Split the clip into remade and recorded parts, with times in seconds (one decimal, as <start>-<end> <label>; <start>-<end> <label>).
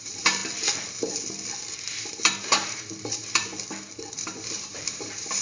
0.0-0.4 remade; 0.4-1.9 recorded; 1.9-3.5 remade; 3.5-4.1 recorded; 4.1-5.4 remade